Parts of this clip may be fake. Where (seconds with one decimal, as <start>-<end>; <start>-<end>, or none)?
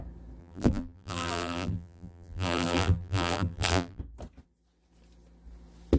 0.4-4.0